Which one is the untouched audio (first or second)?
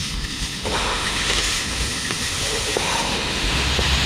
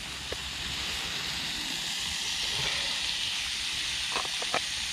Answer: second